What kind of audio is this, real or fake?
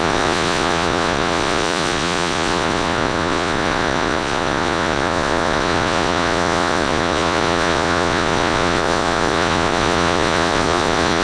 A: fake